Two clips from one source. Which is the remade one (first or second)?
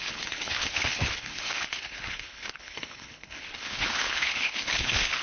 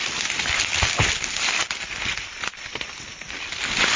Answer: first